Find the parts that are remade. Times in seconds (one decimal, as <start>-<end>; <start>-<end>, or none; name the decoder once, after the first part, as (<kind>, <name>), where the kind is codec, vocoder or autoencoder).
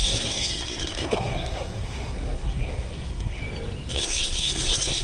0.0-3.4 (codec, SNAC); 3.9-5.0